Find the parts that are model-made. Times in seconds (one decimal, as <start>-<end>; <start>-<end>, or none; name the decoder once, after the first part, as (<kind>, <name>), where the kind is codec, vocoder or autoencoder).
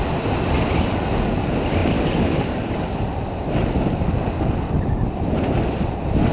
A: none